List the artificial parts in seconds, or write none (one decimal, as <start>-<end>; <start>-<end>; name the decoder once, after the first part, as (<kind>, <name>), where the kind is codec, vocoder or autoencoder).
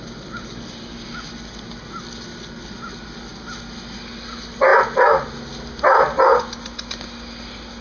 none